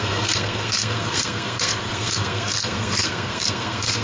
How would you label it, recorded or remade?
remade